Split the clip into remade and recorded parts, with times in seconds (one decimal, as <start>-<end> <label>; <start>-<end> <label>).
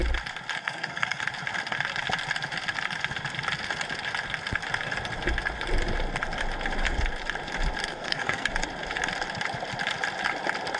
0.0-0.6 recorded; 0.6-1.2 remade; 1.2-7.8 recorded; 7.8-8.5 remade; 8.5-10.8 recorded